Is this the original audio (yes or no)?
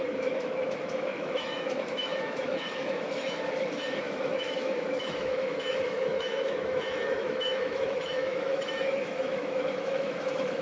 no